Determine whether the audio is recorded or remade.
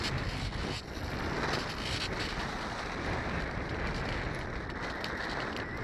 recorded